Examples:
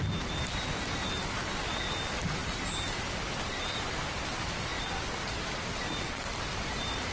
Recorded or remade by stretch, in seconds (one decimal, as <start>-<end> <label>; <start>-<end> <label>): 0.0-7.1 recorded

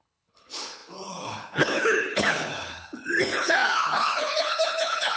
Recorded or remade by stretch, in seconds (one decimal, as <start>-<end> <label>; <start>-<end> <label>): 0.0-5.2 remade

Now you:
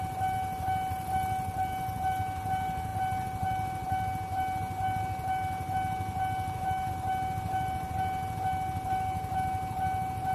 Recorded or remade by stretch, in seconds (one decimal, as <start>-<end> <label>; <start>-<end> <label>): 0.0-10.3 recorded